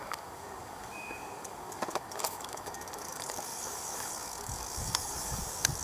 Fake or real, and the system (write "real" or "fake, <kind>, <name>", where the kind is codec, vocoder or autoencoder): fake, codec, DAC